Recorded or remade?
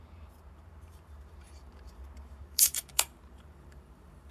remade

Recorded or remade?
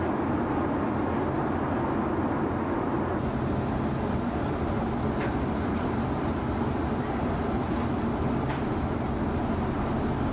recorded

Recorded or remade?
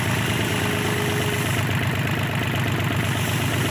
recorded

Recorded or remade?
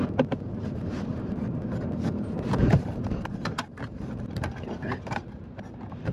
remade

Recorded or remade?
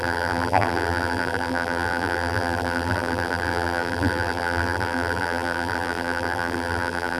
remade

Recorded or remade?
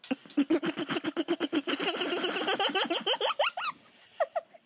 recorded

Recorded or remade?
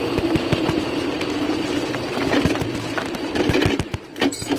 remade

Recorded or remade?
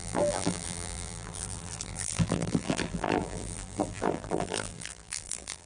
remade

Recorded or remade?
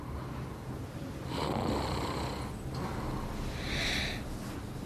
recorded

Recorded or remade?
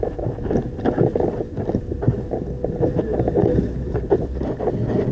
remade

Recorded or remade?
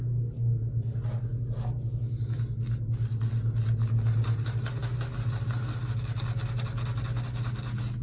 recorded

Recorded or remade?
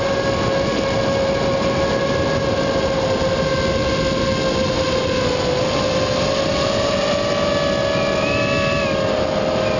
recorded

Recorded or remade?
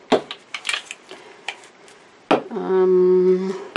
recorded